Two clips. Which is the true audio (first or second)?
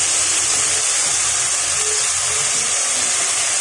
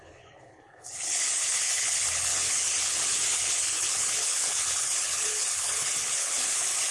first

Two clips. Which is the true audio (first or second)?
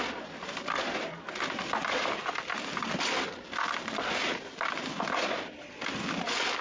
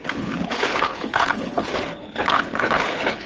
first